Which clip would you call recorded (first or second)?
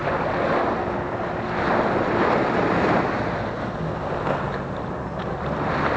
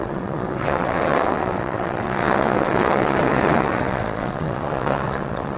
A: first